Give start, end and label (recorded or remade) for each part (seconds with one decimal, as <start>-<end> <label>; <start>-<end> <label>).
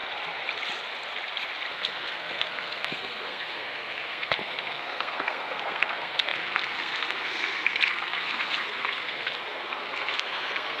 0.0-1.7 recorded; 1.7-10.8 remade